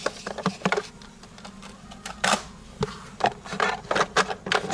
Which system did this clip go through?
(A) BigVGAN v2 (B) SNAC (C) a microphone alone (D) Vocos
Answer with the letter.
C